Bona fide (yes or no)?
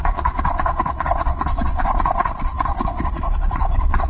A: no